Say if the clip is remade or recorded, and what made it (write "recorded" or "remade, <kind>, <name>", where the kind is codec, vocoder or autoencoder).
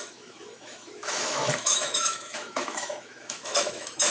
remade, autoencoder, DAC-VAE